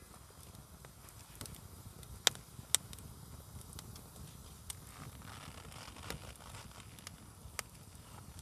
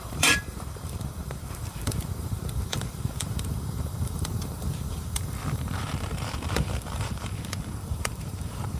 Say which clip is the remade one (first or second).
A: second